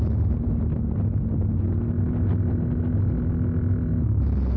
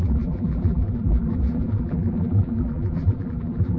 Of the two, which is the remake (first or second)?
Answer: second